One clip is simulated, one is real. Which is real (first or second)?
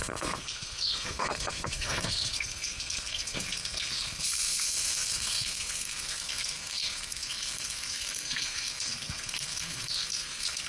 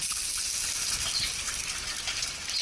second